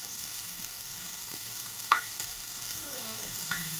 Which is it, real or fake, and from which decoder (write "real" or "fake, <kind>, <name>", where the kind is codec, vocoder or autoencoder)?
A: fake, codec, DAC